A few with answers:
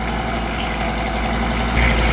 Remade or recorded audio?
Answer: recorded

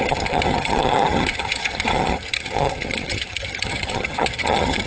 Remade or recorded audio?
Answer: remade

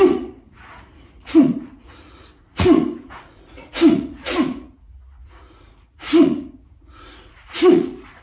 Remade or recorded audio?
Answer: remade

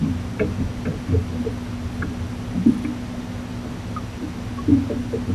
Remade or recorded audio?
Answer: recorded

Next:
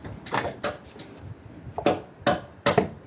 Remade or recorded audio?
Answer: recorded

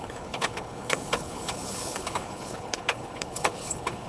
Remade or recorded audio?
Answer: remade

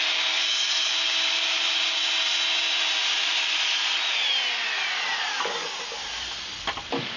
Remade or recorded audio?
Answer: recorded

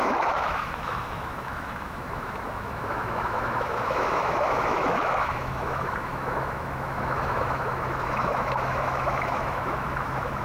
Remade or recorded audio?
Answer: remade